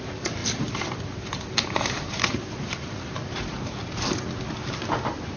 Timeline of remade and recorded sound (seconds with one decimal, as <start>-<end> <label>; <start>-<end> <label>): 0.0-0.4 recorded; 0.4-3.0 remade; 3.0-5.4 recorded